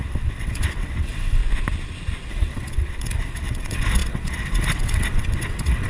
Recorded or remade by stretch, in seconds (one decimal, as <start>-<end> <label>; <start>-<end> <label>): 0.0-1.4 remade; 1.4-2.3 recorded; 2.3-5.9 remade